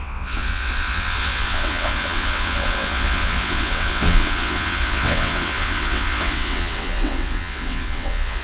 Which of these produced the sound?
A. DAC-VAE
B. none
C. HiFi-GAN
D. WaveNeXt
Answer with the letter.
D